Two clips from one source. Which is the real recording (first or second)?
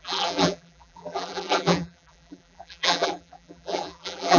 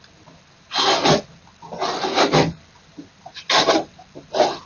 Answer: second